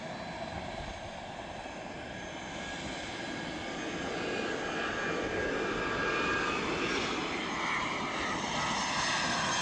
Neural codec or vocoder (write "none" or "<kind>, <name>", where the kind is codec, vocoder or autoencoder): none